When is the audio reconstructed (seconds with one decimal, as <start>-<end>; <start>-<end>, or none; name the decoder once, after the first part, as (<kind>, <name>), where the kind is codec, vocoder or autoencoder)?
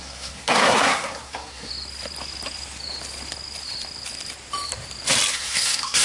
0.0-1.7 (codec, SNAC); 5.3-6.0